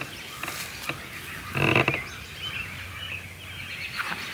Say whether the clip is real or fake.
real